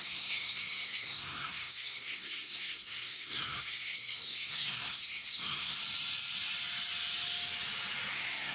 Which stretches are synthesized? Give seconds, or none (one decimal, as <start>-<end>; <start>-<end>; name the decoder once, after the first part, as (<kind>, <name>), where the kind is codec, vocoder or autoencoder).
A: 0.0-5.8 (codec, SNAC); 8.1-8.5

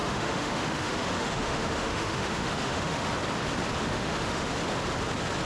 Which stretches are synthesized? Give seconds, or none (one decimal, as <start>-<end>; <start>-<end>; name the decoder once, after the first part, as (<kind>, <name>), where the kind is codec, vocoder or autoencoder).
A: 0.0-3.1 (autoencoder, DAC-VAE); 3.8-4.5

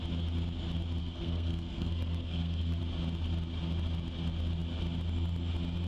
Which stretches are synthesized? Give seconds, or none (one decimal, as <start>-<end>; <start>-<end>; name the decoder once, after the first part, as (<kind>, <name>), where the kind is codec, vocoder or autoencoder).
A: 1.0-2.8 (codec, SNAC)

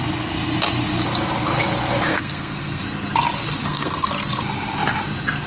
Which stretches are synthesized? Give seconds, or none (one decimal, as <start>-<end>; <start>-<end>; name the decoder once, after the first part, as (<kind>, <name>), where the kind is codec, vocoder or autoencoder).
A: 2.1-2.8 (codec, SNAC); 3.6-4.1

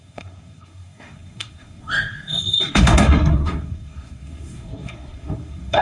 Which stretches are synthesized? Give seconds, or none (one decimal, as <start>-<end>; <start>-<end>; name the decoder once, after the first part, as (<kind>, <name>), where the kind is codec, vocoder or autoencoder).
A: 0.0-5.8 (codec, SNAC)

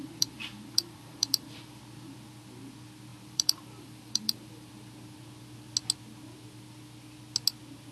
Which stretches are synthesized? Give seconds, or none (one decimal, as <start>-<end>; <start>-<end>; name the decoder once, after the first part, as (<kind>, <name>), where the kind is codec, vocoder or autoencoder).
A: 0.0-1.8 (vocoder, BigVGAN v2); 3.1-4.7